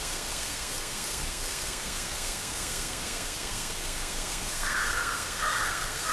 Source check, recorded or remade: remade